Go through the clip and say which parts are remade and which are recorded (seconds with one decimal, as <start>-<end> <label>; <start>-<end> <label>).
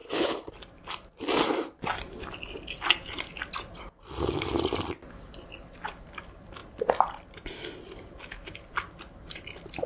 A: 0.0-0.5 remade; 0.5-9.9 recorded